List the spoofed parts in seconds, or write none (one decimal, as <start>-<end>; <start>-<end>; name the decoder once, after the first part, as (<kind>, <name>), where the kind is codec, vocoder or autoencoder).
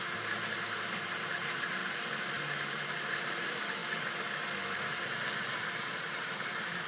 0.0-3.8 (vocoder, BigVGAN v2); 4.9-6.9